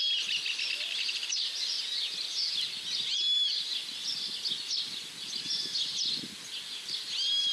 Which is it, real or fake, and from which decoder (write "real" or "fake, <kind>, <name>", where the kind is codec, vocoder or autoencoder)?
real